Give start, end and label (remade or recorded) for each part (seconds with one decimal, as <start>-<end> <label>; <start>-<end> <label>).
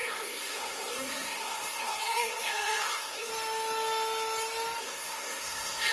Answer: 0.0-3.3 remade; 3.3-4.8 recorded; 4.8-5.9 remade